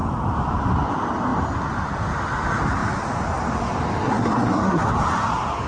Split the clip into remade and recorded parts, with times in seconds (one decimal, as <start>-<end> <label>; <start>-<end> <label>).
0.0-4.0 recorded; 4.0-4.9 remade; 4.9-5.7 recorded